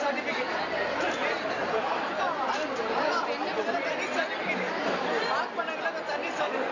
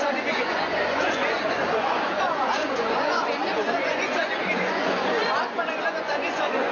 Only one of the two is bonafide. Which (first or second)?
first